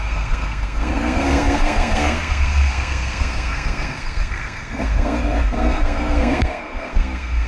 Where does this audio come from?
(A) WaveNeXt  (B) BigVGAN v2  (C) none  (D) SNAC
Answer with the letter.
D